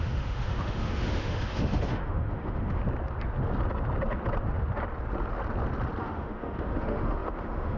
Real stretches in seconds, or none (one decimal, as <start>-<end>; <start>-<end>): 2.8-6.0